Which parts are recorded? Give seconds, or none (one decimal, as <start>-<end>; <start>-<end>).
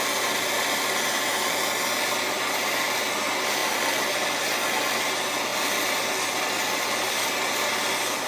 0.0-8.3